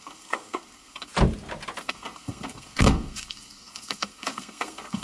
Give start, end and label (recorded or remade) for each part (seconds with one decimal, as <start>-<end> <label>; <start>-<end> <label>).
0.0-1.1 remade; 1.1-1.8 recorded; 1.8-5.0 remade